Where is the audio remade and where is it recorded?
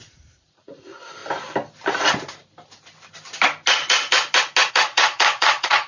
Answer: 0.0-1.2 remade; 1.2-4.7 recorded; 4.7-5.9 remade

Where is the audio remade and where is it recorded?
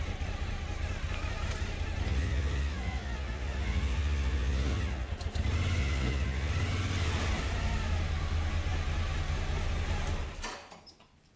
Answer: 0.0-2.1 recorded; 2.1-5.1 remade; 5.1-5.8 recorded; 5.8-6.5 remade; 6.5-11.4 recorded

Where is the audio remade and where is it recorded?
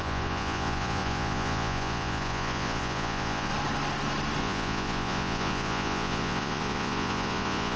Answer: 0.0-3.5 remade; 3.5-4.4 recorded; 4.4-7.8 remade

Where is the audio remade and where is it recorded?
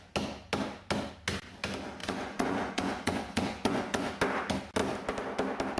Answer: 0.0-2.0 recorded; 2.0-4.1 remade; 4.1-5.8 recorded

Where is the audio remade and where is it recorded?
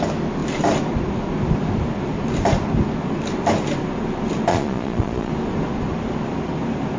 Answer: 0.0-4.5 recorded; 4.5-5.3 remade; 5.3-7.0 recorded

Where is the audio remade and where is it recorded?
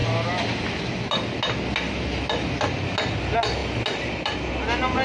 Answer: 0.0-5.0 recorded